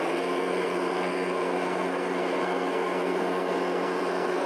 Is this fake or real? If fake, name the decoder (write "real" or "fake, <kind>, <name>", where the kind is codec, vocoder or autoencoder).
fake, codec, SNAC